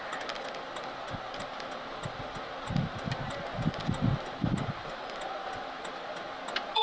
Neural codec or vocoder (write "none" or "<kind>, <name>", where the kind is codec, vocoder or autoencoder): none